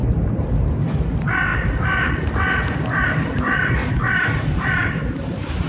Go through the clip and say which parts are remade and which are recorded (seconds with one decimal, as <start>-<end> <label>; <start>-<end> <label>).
0.0-0.8 recorded; 0.8-3.8 remade; 3.8-4.5 recorded; 4.5-5.7 remade